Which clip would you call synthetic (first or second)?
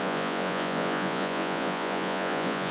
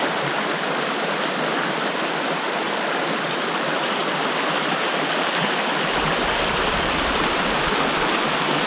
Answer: first